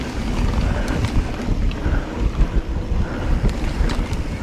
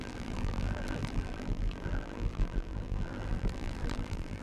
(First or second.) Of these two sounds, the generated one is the second